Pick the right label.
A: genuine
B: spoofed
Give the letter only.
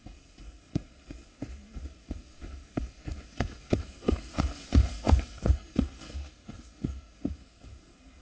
B